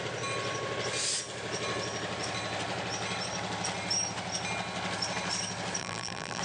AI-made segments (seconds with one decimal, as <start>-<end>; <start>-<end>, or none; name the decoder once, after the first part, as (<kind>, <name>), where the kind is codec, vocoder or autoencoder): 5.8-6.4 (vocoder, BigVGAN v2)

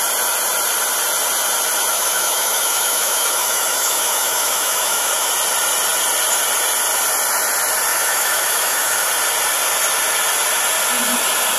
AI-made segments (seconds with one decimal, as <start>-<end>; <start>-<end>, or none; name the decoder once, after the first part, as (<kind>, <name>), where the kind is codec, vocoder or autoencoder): 1.9-5.3 (autoencoder, DAC-VAE); 7.9-9.1

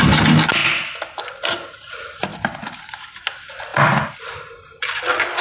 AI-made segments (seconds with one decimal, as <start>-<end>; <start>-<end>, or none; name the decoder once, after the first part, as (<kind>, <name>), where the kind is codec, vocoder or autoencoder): none

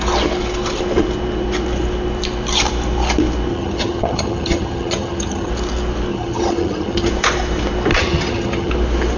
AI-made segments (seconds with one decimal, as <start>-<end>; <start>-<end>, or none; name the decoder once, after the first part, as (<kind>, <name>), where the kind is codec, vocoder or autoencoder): 3.5-5.5 (vocoder, HiFi-GAN); 6.1-7.1; 7.9-8.7

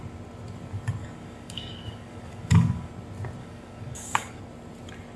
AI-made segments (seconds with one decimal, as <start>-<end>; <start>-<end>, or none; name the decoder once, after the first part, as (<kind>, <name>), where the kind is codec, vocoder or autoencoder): 1.0-2.9 (codec, DAC); 3.4-4.4

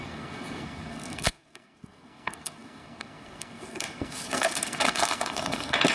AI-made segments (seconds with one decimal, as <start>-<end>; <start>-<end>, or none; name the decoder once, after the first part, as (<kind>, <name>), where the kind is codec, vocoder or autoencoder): 0.0-5.9 (codec, SNAC)